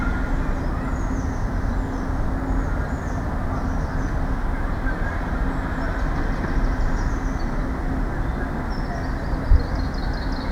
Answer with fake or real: real